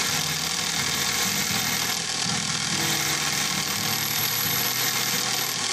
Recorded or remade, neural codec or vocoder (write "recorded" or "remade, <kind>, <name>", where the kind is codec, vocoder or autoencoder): recorded